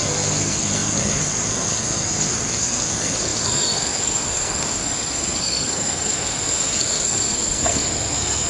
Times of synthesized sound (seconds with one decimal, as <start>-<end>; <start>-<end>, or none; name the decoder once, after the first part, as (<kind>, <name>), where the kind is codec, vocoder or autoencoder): 0.0-8.5 (codec, SNAC)